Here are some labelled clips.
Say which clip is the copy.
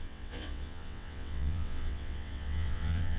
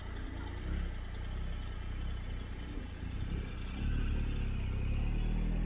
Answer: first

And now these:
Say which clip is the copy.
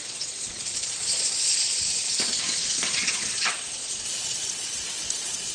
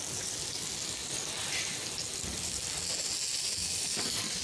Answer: first